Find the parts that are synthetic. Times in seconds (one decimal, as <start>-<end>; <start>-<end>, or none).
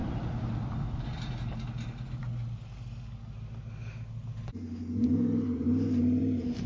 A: none